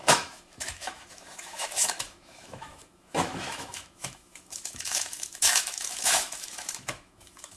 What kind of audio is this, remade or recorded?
remade